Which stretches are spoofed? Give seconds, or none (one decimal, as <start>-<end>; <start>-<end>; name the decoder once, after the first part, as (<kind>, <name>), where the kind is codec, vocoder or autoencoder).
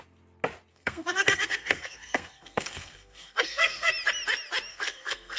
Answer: 0.7-3.9 (codec, SNAC); 4.7-5.4